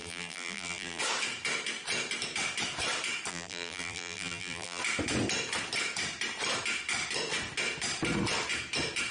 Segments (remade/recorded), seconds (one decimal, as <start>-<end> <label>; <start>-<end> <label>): 0.0-1.0 remade; 1.0-3.3 recorded; 3.3-4.8 remade; 4.8-9.1 recorded